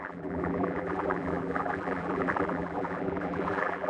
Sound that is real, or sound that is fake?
fake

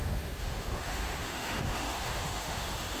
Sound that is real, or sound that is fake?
fake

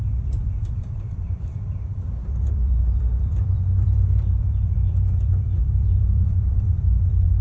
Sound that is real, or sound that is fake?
fake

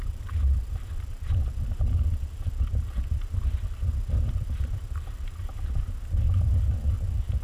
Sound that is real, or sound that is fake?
fake